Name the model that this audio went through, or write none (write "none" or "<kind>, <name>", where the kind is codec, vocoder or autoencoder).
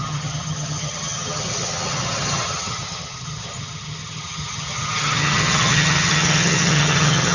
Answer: vocoder, HiFi-GAN